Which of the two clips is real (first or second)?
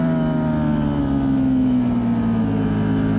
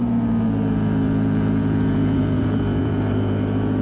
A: first